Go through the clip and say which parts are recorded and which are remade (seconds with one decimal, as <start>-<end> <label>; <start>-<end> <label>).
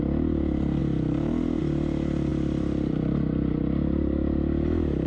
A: 0.0-5.1 recorded